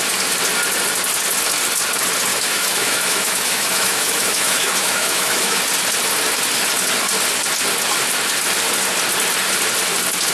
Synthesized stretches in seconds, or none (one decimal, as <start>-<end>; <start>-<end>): 2.3-5.6